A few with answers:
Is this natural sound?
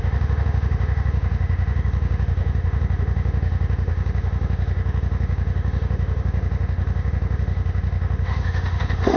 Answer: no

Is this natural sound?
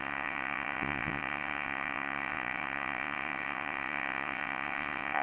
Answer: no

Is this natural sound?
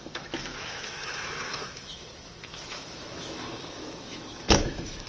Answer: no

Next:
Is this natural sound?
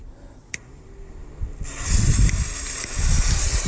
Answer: yes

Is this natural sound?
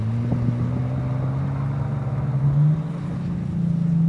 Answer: yes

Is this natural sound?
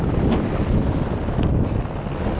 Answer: yes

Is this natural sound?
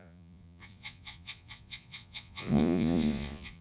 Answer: no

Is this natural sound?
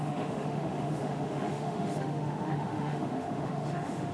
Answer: no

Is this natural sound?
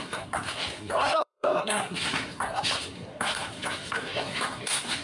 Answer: no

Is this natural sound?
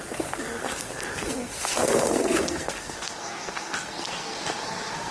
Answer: no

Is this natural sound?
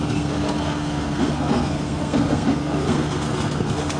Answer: no